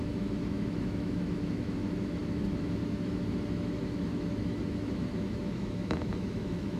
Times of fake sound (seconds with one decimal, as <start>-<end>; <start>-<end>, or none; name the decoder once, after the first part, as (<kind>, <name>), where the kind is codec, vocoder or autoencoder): 0.0-6.8 (autoencoder, DAC-VAE)